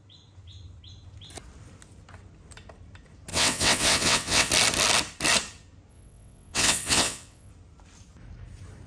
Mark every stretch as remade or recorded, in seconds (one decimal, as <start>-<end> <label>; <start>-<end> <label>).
0.0-3.3 recorded; 3.3-4.5 remade; 4.5-5.9 recorded; 5.9-7.5 remade; 7.5-8.9 recorded